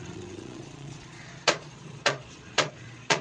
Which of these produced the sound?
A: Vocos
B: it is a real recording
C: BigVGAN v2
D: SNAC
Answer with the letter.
A